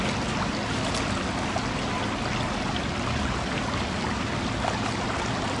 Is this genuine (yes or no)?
yes